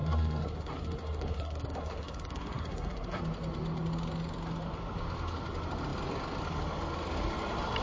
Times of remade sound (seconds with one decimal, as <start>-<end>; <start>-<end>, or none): 0.0-3.2